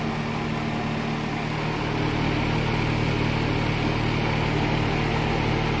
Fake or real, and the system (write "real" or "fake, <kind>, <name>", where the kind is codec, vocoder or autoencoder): real